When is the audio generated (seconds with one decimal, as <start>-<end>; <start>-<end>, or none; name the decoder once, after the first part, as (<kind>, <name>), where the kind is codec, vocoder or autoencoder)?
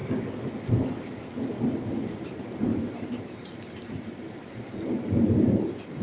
2.6-6.0 (vocoder, BigVGAN v2)